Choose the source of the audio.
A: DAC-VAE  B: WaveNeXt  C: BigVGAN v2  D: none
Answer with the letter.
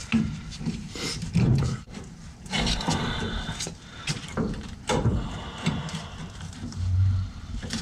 C